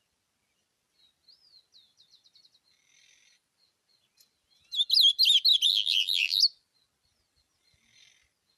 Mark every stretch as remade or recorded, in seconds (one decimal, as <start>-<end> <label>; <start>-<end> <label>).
0.0-5.7 recorded; 5.7-6.4 remade; 6.4-8.6 recorded